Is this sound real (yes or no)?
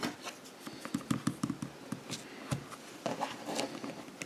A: yes